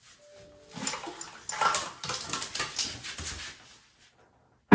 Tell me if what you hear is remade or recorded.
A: recorded